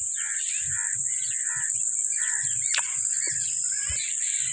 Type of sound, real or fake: real